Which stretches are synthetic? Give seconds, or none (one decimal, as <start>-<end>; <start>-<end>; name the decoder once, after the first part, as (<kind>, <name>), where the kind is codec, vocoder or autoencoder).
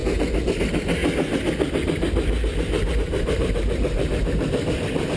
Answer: 0.6-1.0 (vocoder, BigVGAN v2); 2.9-5.2